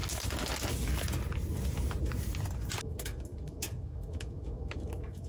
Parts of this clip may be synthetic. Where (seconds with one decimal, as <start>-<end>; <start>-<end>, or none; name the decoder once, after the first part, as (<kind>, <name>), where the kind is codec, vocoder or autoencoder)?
2.8-5.3 (autoencoder, DAC-VAE)